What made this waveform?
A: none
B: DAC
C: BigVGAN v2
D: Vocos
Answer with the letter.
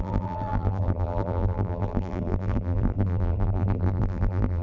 C